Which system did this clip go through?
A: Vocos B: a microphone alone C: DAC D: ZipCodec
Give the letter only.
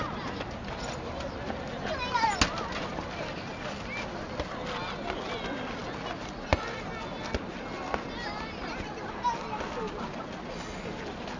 B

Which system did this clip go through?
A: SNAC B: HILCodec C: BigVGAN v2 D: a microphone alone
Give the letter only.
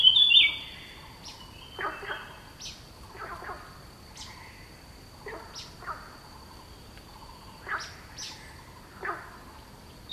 D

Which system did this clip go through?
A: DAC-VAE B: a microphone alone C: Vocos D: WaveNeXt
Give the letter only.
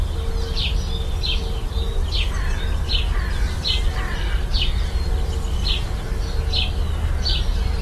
B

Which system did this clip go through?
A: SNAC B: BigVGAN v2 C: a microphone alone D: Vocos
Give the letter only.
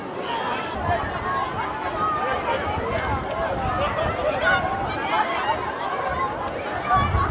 C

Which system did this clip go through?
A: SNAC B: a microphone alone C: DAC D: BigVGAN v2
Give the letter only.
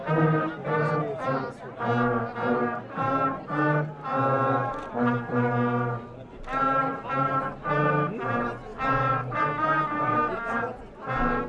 B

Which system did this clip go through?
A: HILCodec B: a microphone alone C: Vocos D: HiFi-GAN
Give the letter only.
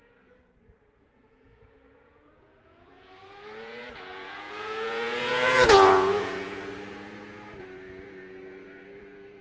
C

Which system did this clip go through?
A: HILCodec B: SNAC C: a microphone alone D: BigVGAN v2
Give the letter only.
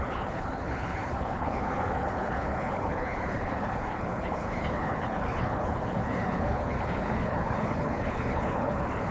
A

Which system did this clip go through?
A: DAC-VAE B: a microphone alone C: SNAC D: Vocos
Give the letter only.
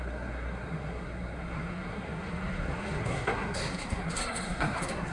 C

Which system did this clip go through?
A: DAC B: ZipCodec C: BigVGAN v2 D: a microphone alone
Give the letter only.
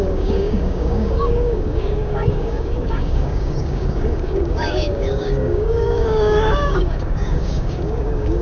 A